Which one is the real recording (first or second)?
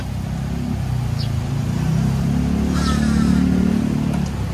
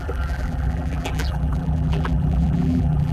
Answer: first